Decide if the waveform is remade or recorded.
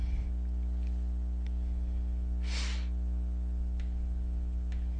recorded